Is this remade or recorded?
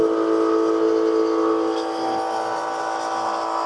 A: recorded